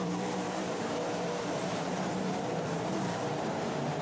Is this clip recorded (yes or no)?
no